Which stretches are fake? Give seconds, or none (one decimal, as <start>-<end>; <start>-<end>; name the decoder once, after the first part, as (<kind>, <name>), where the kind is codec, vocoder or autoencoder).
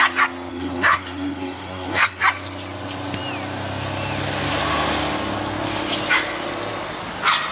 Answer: 0.5-2.2 (codec, SNAC)